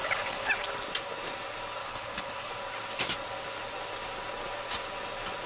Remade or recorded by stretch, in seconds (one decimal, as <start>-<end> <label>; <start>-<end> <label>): 0.0-0.5 remade; 0.5-1.8 recorded; 1.8-2.5 remade; 2.5-5.5 recorded